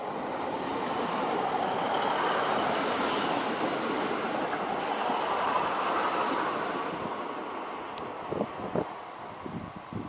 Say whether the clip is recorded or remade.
recorded